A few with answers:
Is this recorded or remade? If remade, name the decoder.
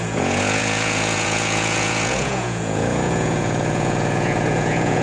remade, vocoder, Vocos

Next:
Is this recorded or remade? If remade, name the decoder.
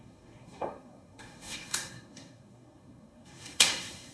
remade, codec, SNAC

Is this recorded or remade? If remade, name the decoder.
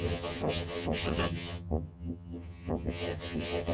remade, vocoder, HiFi-GAN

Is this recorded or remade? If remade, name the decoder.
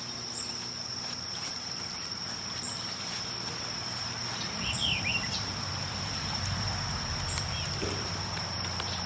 remade, vocoder, BigVGAN v2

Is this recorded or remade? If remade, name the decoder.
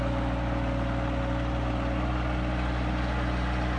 recorded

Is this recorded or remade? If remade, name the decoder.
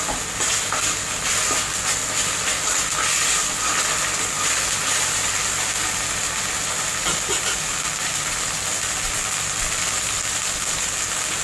recorded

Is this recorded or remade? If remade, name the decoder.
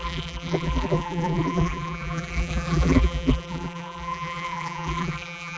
remade, vocoder, BigVGAN v2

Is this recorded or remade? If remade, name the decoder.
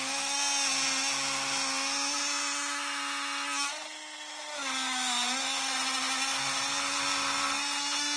recorded